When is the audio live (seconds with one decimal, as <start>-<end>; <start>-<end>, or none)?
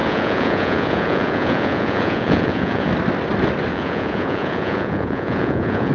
2.9-3.7